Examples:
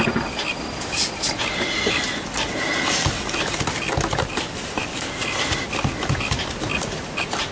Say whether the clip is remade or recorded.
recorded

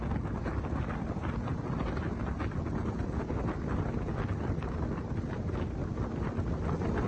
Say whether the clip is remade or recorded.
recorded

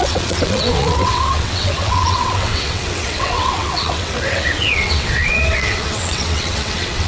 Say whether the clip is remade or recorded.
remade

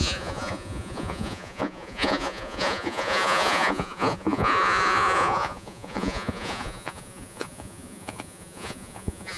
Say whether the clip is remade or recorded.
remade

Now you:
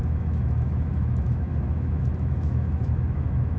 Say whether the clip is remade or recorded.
remade